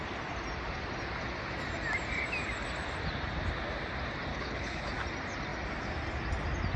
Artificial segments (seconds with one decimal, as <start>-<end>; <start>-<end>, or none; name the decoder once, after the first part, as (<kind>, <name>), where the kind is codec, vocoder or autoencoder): 4.3-4.9 (codec, HILCodec)